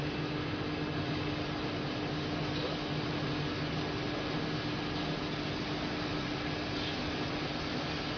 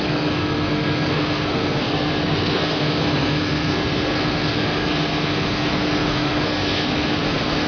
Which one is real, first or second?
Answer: first